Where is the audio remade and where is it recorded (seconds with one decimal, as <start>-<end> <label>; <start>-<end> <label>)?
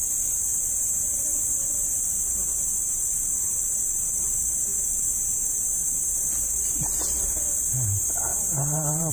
0.0-0.5 recorded; 0.5-1.7 remade; 1.7-8.3 recorded; 8.3-9.1 remade